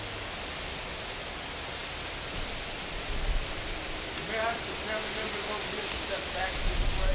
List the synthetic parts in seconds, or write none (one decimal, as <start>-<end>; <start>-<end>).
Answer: none